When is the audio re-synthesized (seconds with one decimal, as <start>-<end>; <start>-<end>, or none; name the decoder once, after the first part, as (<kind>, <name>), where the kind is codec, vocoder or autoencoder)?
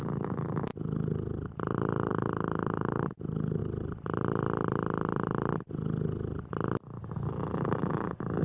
0.0-0.7 (vocoder, BigVGAN v2); 2.1-3.6; 7.9-8.4